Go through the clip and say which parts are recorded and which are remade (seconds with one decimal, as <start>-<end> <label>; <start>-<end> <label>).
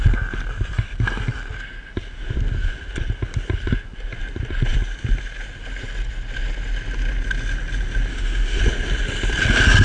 0.0-8.1 recorded; 8.1-8.6 remade; 8.6-9.8 recorded